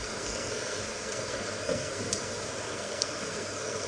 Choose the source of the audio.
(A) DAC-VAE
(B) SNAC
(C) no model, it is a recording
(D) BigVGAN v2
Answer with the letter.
B